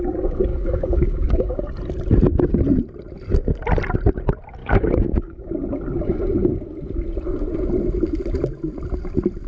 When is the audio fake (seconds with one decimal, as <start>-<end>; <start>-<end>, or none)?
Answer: 0.5-1.6; 4.6-5.5

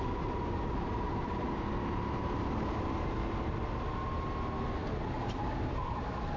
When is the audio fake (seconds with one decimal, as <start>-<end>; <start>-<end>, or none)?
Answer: none

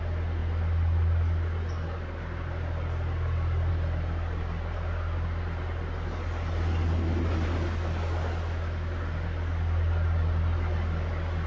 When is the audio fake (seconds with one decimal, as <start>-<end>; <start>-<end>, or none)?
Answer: none

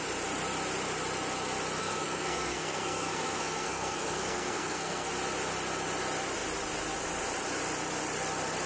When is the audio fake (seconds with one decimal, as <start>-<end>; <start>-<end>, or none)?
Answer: 1.8-5.1

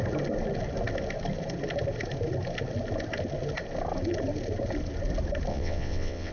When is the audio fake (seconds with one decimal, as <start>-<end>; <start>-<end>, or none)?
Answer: 5.5-6.3

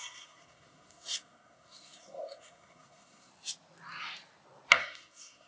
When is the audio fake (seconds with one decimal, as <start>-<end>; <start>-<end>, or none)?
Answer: 0.0-3.3; 4.8-5.5

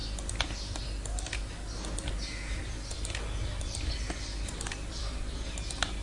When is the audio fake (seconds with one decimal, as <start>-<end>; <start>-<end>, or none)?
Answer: 3.6-6.0

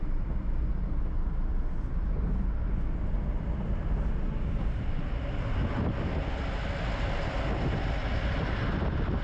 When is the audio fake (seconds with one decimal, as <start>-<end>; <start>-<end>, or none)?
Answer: none